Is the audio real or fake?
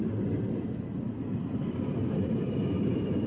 real